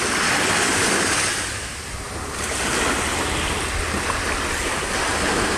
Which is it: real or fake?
real